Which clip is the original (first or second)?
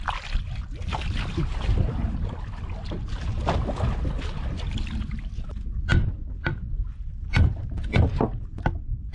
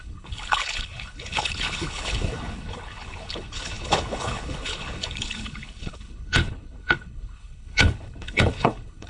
first